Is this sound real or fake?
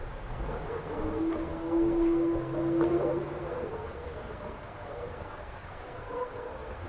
fake